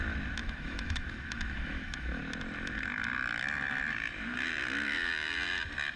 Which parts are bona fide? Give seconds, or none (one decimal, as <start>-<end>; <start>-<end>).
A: 0.0-0.4; 2.2-6.0